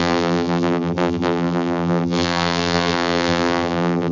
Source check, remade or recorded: remade